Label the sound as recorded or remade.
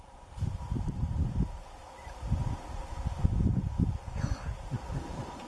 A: remade